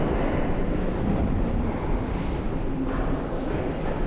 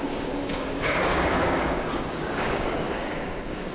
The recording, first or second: first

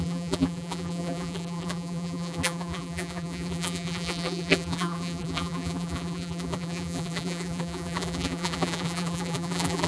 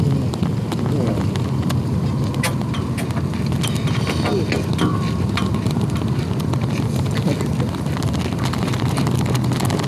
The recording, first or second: second